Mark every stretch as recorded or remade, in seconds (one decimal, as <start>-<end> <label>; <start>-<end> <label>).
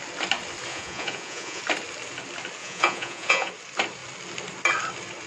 0.0-0.7 recorded; 0.7-1.6 remade; 1.6-2.6 recorded; 2.6-3.5 remade; 3.5-5.3 recorded